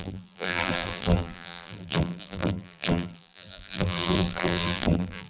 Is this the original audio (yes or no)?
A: no